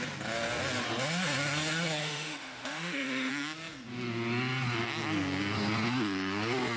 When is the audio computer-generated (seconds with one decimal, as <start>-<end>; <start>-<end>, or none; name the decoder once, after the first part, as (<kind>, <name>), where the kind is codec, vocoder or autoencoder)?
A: 2.0-3.3 (autoencoder, DAC-VAE)